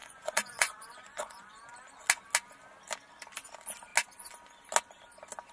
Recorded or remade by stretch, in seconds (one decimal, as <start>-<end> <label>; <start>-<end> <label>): 0.0-1.6 remade; 1.6-5.5 recorded